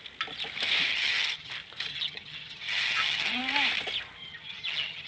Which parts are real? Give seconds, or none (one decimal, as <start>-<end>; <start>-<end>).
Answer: 0.0-0.9; 1.5-1.9; 3.4-4.2